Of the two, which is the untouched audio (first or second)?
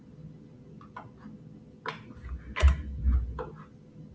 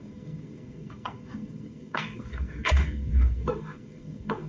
first